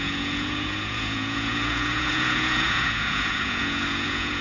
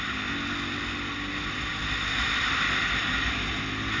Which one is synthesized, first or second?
first